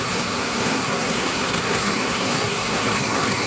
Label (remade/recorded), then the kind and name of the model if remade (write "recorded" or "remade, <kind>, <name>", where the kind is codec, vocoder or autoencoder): remade, codec, SNAC